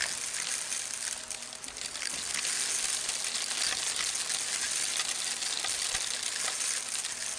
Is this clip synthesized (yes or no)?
no